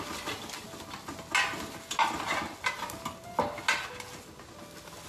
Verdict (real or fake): real